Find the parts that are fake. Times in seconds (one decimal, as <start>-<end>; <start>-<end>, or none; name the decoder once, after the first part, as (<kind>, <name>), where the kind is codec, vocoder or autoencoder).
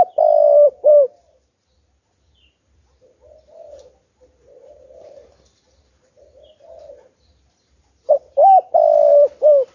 none